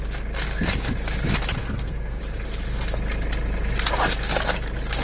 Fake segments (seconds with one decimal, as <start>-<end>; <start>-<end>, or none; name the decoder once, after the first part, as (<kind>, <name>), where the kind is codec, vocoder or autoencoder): 1.6-2.2 (codec, SNAC)